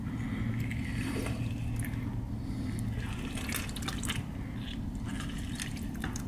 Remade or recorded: recorded